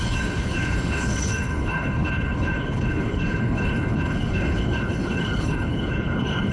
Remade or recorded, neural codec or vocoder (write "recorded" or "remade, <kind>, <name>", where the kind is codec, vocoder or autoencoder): remade, codec, HILCodec